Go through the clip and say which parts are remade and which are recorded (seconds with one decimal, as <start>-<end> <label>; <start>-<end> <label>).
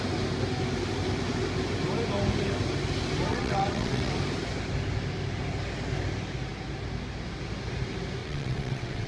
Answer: 0.0-3.3 recorded; 3.3-4.1 remade; 4.1-8.2 recorded; 8.2-9.1 remade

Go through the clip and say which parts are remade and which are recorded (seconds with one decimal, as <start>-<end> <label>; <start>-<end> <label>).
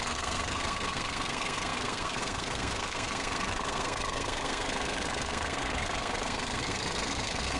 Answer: 0.0-7.6 remade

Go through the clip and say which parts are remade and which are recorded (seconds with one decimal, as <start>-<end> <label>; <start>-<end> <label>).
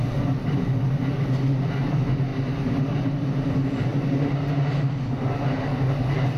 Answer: 0.0-6.4 recorded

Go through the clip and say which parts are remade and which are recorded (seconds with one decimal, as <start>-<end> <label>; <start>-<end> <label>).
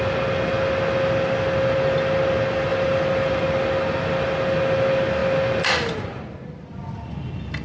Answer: 0.0-2.7 recorded; 2.7-3.4 remade; 3.4-7.6 recorded